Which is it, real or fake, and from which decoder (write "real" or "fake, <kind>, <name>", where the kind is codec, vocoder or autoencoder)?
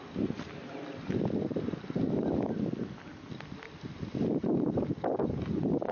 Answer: real